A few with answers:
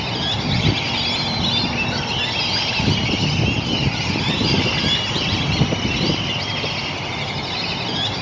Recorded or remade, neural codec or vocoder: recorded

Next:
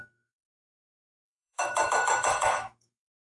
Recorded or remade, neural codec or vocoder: remade, autoencoder, DAC-VAE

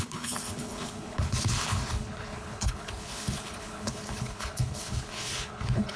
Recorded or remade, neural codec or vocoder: remade, codec, HILCodec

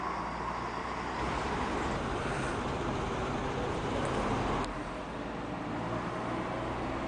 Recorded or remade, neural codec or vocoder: recorded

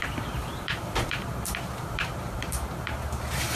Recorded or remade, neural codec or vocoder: remade, vocoder, BigVGAN v2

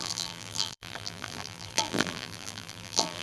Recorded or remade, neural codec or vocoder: remade, vocoder, BigVGAN v2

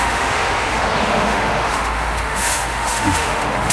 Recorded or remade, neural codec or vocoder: remade, autoencoder, DAC-VAE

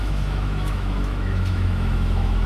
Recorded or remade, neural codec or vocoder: remade, autoencoder, DAC-VAE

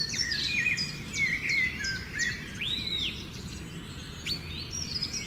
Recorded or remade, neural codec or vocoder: recorded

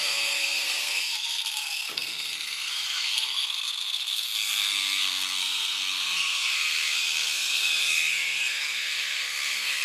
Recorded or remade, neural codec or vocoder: remade, codec, SNAC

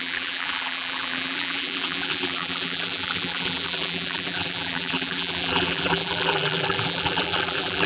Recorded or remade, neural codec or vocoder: remade, vocoder, BigVGAN v2